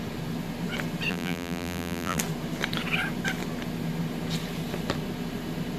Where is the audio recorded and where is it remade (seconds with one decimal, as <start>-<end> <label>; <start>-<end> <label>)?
0.0-1.1 recorded; 1.1-2.2 remade; 2.2-5.8 recorded